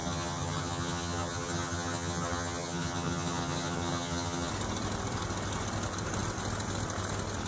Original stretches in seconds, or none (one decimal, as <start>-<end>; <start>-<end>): 4.5-7.5